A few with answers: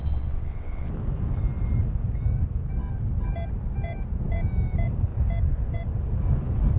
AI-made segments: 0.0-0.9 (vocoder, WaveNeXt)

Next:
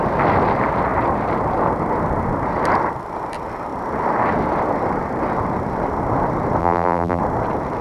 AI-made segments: 6.6-7.2 (vocoder, BigVGAN v2)

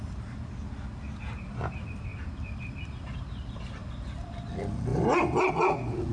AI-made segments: 2.1-2.7 (vocoder, BigVGAN v2); 3.8-4.4; 4.9-5.5

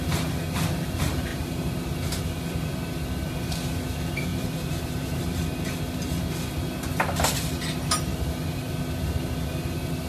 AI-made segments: 4.3-5.2 (vocoder, BigVGAN v2)